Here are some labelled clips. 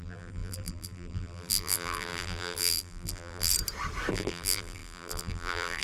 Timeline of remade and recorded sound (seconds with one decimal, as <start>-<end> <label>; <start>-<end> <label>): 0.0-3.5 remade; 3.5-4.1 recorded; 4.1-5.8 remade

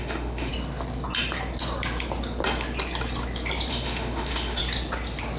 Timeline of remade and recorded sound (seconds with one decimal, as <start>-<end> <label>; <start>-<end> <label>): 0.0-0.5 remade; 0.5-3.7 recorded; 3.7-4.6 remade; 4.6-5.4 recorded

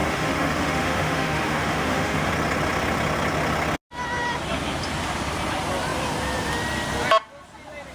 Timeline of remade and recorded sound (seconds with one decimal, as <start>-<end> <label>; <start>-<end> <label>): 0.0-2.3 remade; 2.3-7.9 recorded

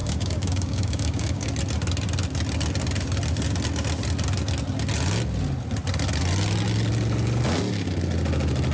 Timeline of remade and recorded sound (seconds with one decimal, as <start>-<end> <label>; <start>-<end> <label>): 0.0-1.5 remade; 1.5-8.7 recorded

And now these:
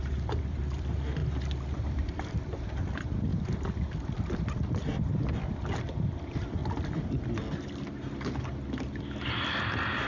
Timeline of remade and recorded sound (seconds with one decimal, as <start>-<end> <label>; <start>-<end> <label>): 0.0-1.2 remade; 1.2-1.8 recorded; 1.8-3.3 remade; 3.3-5.5 recorded; 5.5-6.6 remade; 6.6-9.2 recorded; 9.2-10.1 remade

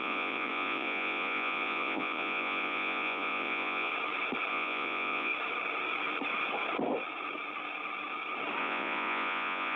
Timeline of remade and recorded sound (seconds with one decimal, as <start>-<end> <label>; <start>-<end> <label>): 0.0-3.9 remade; 3.9-4.5 recorded; 4.5-5.3 remade; 5.3-8.6 recorded; 8.6-9.8 remade

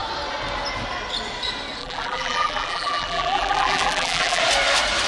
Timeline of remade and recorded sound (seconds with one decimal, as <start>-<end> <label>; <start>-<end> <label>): 0.0-1.8 recorded; 1.8-4.4 remade; 4.4-5.1 recorded

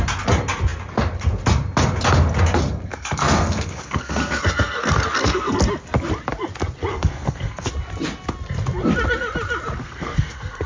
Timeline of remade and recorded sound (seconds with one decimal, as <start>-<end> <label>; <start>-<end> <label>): 0.0-2.9 recorded; 2.9-5.6 remade; 5.6-6.9 recorded; 6.9-7.7 remade; 7.7-9.8 recorded; 9.8-10.7 remade